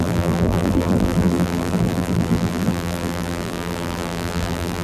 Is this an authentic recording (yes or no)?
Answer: no